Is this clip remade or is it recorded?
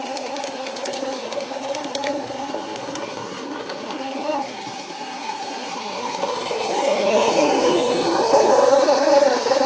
remade